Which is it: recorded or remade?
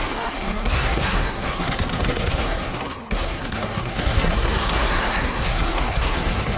remade